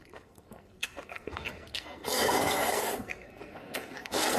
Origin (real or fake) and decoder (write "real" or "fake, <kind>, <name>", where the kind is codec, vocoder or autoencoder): fake, codec, SNAC